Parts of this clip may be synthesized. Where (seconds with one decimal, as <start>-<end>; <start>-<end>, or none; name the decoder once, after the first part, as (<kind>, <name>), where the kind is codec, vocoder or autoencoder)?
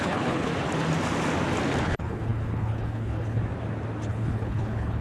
0.0-0.5 (codec, HILCodec); 1.8-3.4; 4.1-5.0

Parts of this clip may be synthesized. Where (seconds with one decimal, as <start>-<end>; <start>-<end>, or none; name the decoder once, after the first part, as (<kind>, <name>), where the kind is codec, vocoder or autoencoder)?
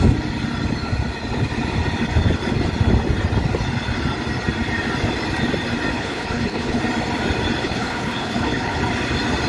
5.9-6.8 (codec, HILCodec); 7.6-8.8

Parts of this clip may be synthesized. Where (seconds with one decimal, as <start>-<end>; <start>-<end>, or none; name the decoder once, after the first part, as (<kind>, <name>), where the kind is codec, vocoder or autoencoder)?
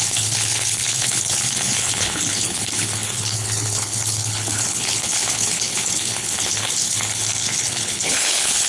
0.0-8.7 (codec, HILCodec)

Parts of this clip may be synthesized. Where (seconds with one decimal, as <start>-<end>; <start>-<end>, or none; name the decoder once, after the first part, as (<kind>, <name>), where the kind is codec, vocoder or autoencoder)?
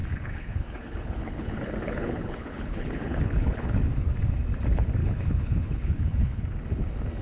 0.0-3.8 (codec, HILCodec); 5.0-6.4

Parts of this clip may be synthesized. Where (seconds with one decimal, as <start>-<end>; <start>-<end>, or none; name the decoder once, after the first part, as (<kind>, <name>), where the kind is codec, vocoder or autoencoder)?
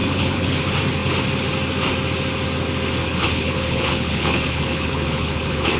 0.0-0.6 (codec, HILCodec); 3.0-5.8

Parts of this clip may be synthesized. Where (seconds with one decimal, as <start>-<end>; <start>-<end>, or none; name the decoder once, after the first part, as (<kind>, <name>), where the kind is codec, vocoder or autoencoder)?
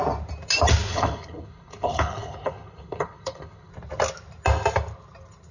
0.9-3.7 (codec, HILCodec)